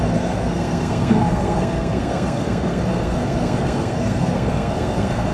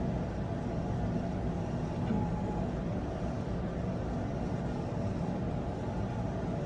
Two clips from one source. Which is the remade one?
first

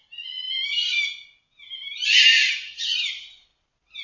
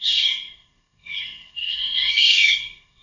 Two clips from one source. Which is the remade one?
second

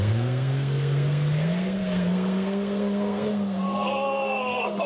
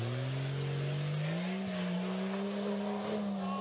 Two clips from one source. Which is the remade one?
first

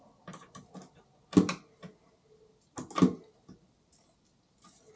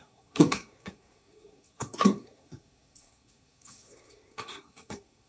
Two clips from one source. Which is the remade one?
second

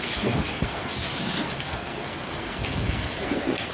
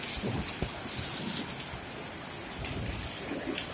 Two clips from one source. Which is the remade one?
first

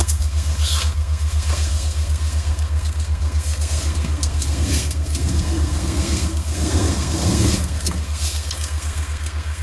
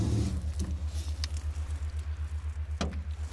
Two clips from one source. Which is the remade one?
first